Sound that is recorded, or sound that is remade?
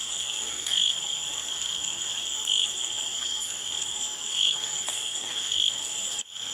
remade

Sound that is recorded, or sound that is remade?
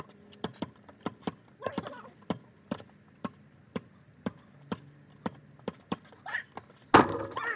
recorded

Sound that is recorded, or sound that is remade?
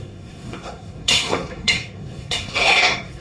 remade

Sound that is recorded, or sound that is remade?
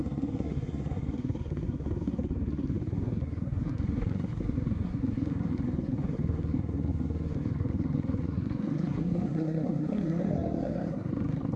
remade